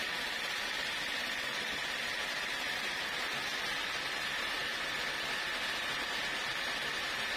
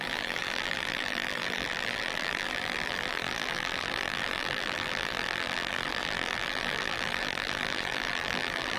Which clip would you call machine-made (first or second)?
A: second